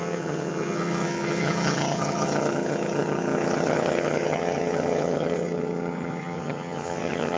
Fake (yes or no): yes